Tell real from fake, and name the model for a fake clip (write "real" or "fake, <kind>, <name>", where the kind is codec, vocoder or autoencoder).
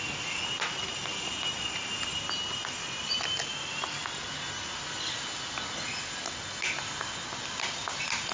real